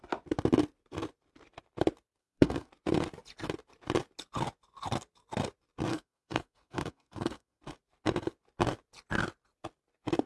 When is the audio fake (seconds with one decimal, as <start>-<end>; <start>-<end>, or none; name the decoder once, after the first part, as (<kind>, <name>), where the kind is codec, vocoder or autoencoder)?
2.2-2.7 (codec, SNAC); 5.9-7.6